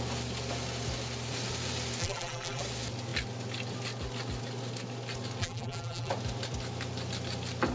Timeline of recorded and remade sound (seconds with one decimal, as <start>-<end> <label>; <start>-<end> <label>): 0.0-2.0 recorded; 2.0-2.6 remade; 2.6-5.4 recorded; 5.4-6.1 remade; 6.1-7.7 recorded

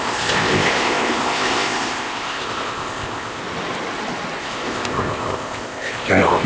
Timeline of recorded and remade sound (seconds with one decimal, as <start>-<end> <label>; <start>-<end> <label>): 0.0-3.4 remade; 3.4-4.4 recorded; 4.4-6.5 remade

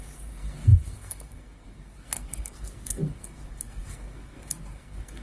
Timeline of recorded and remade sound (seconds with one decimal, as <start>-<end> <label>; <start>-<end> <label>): 0.0-5.2 remade